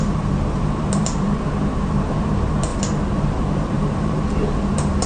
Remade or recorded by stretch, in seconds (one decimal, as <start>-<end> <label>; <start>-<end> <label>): 0.0-5.1 remade